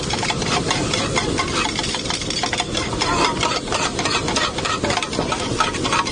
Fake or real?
fake